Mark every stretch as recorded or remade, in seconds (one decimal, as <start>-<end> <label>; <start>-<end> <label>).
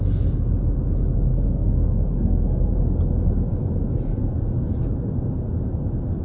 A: 0.0-1.3 recorded; 1.3-2.7 remade; 2.7-6.2 recorded